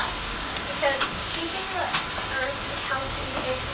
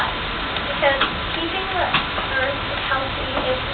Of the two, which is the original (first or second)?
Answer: second